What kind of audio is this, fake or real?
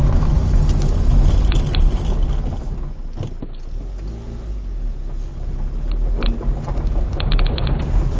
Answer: real